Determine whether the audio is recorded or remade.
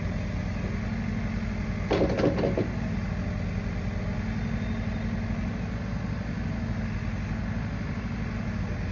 recorded